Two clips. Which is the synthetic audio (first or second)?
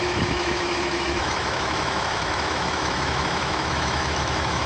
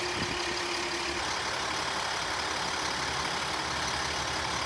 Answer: first